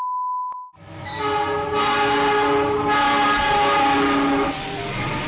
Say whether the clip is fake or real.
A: real